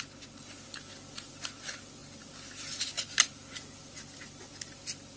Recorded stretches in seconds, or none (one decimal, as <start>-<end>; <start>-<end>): 0.0-5.2